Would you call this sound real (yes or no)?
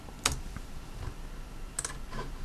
yes